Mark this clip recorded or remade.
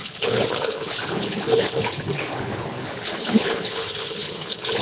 remade